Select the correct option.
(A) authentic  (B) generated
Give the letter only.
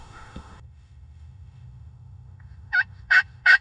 B